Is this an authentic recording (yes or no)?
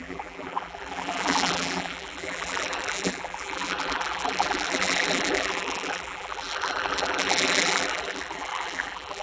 no